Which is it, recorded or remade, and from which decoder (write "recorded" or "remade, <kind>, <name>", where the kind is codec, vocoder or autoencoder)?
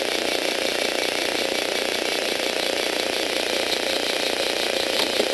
recorded